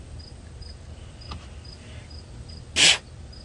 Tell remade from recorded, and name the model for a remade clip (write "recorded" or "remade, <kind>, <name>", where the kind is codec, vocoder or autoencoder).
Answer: recorded